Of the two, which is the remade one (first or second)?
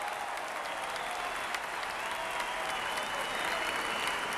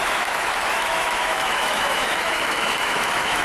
second